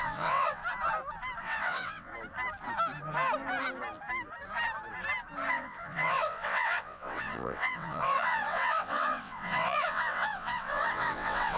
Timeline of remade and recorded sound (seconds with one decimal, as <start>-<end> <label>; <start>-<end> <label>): 0.0-0.6 remade; 0.6-1.4 recorded; 1.4-2.1 remade; 2.1-5.5 recorded; 5.5-11.6 remade

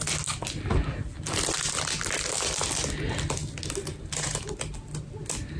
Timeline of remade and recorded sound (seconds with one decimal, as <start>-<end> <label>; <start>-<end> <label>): 0.0-5.6 recorded

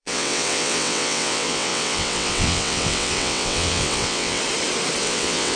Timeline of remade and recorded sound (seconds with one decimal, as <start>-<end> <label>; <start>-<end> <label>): 0.0-4.4 remade; 4.4-5.0 recorded; 5.0-5.6 remade